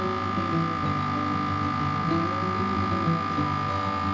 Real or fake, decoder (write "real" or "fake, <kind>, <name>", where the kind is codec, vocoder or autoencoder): real